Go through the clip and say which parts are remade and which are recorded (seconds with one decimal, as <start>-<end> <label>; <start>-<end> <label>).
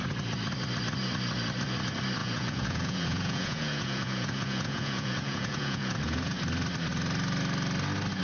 0.0-2.2 recorded; 2.2-6.4 remade; 6.4-8.2 recorded